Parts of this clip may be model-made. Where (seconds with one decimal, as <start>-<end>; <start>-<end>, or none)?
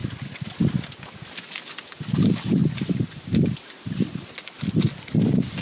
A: none